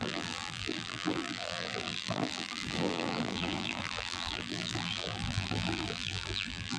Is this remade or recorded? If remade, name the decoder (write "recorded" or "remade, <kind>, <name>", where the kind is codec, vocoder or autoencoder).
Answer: remade, vocoder, BigVGAN v2